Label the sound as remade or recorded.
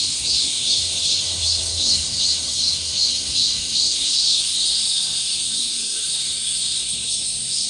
remade